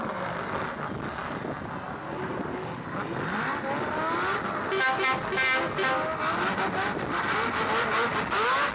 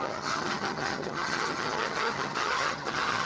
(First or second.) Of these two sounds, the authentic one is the first